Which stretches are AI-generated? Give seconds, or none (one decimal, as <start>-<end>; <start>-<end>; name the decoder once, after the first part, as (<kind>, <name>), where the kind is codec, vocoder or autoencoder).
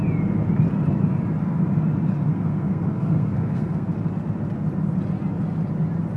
2.3-3.9 (codec, SNAC)